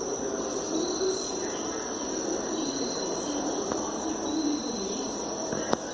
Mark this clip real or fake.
real